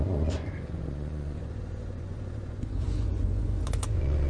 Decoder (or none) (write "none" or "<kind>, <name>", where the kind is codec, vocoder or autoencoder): vocoder, Vocos